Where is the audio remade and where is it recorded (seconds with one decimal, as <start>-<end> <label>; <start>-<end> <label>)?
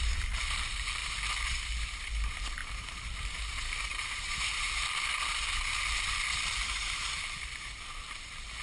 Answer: 0.0-1.0 remade; 1.0-1.5 recorded; 1.5-8.6 remade